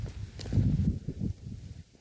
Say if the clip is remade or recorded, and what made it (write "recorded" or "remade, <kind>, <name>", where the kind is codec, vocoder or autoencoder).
recorded